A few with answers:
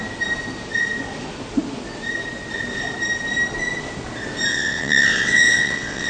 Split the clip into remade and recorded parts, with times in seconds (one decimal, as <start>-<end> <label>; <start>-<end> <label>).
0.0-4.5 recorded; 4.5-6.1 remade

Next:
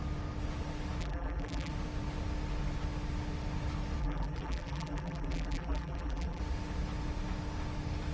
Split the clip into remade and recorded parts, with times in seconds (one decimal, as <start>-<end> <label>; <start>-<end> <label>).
0.0-1.0 recorded; 1.0-1.7 remade; 1.7-4.0 recorded; 4.0-6.4 remade; 6.4-8.1 recorded

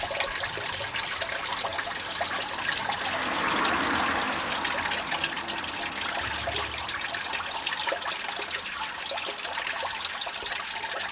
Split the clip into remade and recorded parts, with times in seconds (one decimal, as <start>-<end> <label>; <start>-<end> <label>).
0.0-1.7 recorded; 1.7-3.2 remade; 3.2-11.1 recorded

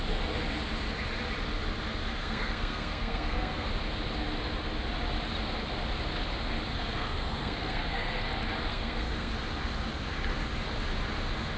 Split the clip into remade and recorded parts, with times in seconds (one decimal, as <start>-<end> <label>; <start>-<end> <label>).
0.0-2.2 recorded; 2.2-3.7 remade; 3.7-6.7 recorded; 6.7-8.2 remade; 8.2-8.7 recorded; 8.7-9.3 remade; 9.3-11.6 recorded